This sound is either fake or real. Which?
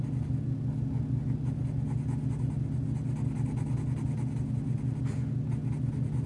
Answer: real